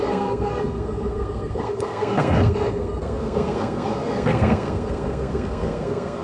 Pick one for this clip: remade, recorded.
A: remade